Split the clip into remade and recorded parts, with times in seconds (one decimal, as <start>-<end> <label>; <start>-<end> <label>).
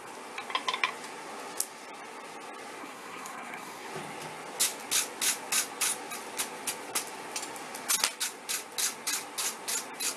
0.0-2.8 recorded; 2.8-3.9 remade; 3.9-10.2 recorded